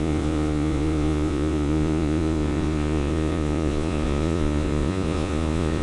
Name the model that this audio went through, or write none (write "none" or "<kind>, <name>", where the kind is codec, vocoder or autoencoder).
vocoder, Vocos